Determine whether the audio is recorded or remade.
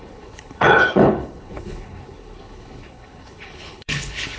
remade